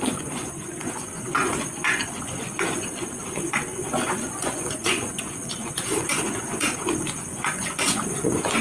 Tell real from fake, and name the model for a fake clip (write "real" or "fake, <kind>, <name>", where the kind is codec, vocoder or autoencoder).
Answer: fake, vocoder, Vocos